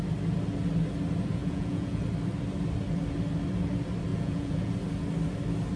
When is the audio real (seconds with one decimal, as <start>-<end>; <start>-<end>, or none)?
0.0-1.4; 2.0-4.1; 4.7-5.8